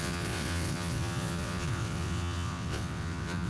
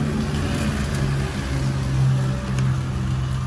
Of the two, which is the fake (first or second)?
first